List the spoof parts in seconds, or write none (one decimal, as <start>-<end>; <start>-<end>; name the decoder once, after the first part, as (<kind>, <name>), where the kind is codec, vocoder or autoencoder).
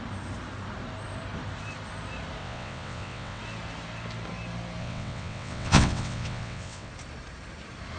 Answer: 2.4-3.4 (vocoder, WaveNeXt); 4.8-6.9